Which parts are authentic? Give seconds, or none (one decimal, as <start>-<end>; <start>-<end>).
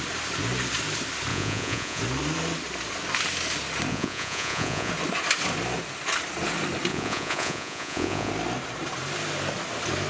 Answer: 0.0-1.3; 2.0-3.9; 4.9-6.9; 8.3-10.1